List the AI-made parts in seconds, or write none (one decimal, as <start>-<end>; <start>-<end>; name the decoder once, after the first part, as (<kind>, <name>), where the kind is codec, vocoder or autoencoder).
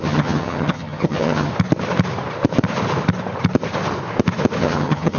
0.0-1.5 (vocoder, HiFi-GAN); 4.6-5.2